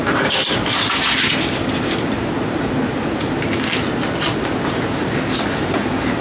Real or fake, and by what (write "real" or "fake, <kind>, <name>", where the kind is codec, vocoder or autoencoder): real